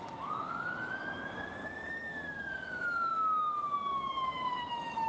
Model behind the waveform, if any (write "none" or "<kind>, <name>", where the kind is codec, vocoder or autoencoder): autoencoder, DAC-VAE